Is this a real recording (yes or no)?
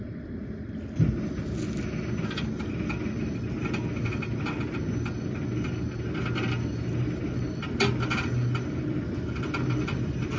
yes